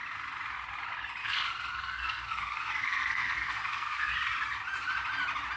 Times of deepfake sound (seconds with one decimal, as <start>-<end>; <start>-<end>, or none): 1.2-4.1